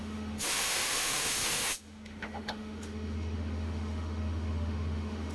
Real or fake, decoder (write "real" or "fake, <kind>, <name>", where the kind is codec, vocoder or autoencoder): fake, autoencoder, DAC-VAE